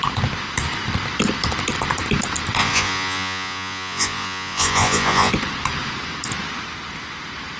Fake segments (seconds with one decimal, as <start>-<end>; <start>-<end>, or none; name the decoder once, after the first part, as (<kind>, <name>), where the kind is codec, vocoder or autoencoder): 2.6-5.3 (vocoder, Vocos)